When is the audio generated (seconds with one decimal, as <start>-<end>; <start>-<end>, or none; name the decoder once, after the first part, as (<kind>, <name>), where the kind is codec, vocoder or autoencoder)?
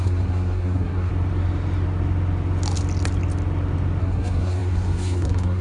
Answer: 0.0-1.1 (codec, SNAC); 4.0-5.6